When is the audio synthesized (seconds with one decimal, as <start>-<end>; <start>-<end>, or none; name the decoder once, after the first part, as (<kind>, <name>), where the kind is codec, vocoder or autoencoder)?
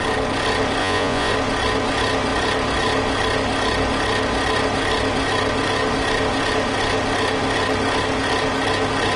0.8-1.3 (vocoder, Vocos)